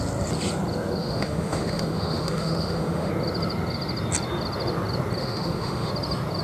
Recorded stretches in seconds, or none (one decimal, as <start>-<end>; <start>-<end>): 0.0-1.0; 3.1-5.2; 5.9-6.4